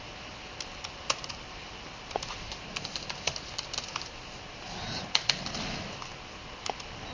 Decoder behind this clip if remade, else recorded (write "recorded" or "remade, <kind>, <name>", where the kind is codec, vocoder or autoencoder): recorded